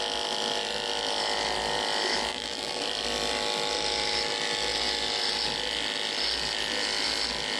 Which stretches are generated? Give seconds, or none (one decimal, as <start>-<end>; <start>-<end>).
2.3-2.8